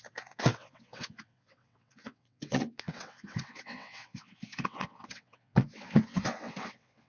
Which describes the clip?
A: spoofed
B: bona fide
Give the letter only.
A